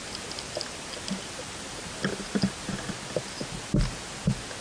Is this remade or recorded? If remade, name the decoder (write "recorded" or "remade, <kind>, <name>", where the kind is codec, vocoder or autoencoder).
recorded